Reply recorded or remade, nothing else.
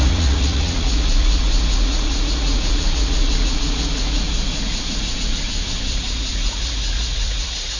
remade